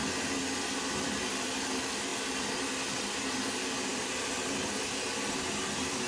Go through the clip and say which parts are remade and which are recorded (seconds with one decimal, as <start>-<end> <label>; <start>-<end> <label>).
0.0-0.8 recorded; 0.8-2.1 remade; 2.1-3.0 recorded; 3.0-6.1 remade